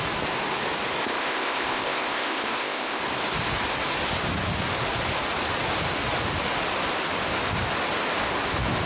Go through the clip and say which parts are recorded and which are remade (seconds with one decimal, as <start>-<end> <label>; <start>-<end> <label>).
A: 0.0-1.0 recorded; 1.0-3.0 remade; 3.0-8.9 recorded